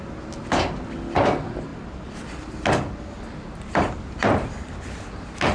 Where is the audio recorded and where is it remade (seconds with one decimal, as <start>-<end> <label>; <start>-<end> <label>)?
0.0-5.5 recorded